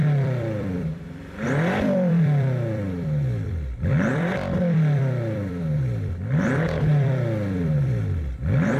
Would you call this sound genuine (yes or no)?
no